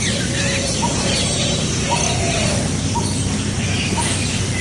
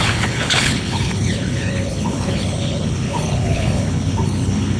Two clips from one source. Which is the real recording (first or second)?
first